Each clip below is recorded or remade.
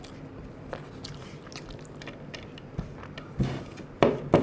recorded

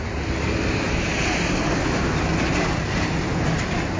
recorded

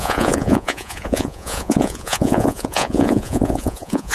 remade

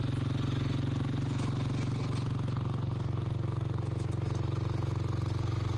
recorded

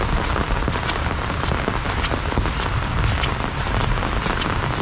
recorded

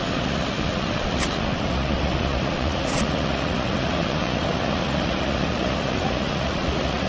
remade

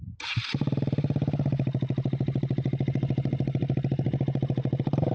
recorded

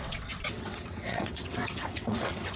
remade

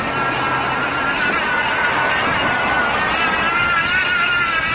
recorded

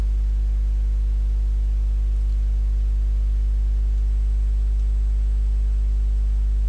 recorded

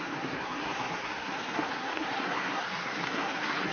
remade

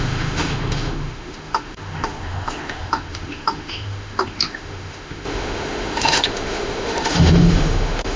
remade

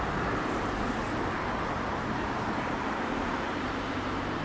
remade